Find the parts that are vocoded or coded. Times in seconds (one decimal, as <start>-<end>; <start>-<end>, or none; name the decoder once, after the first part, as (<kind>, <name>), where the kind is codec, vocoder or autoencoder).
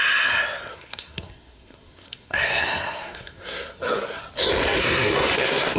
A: 0.7-4.2 (codec, SNAC); 4.8-5.8